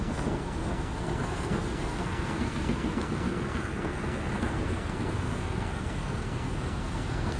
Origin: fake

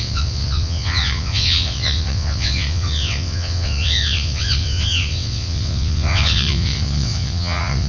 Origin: fake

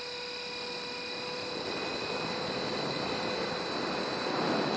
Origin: real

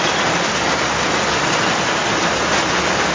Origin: real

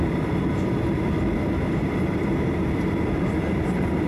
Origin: fake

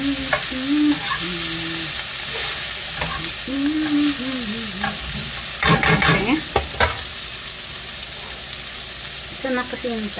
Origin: real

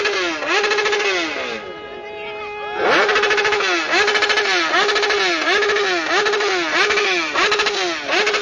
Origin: real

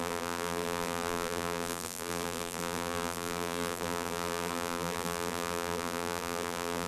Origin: fake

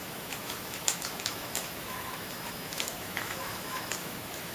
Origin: fake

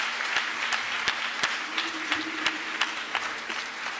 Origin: fake